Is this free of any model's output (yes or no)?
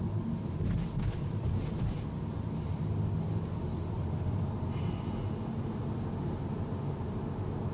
yes